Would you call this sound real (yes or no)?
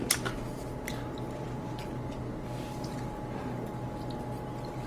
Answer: yes